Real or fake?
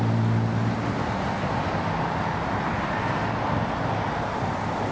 real